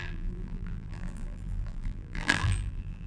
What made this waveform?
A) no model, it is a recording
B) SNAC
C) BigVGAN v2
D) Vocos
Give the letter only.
C